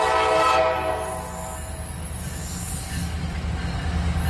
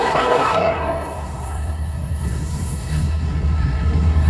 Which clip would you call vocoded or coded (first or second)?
second